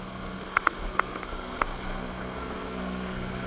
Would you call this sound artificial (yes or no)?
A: yes